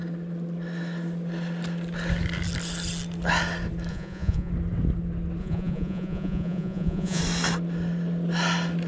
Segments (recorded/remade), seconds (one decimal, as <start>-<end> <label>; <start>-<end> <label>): 0.0-3.9 recorded; 3.9-4.5 remade; 4.5-5.4 recorded; 5.4-7.2 remade; 7.2-8.9 recorded